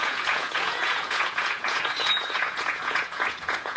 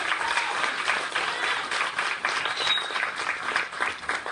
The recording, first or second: second